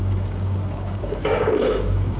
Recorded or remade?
remade